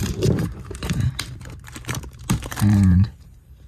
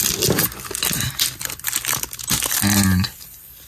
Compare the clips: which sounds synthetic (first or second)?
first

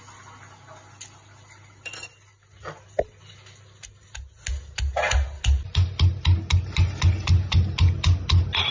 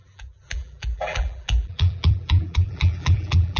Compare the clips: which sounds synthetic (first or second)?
second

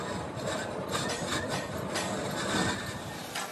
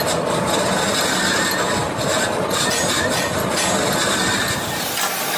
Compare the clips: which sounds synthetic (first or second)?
first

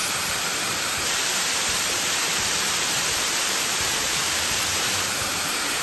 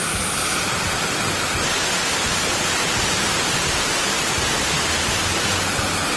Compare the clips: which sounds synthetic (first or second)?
first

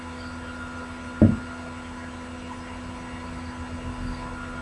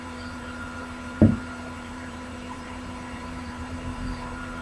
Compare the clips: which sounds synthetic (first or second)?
second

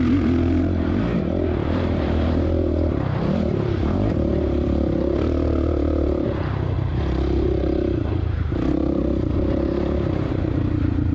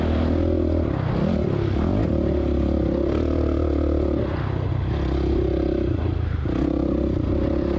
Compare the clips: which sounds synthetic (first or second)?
first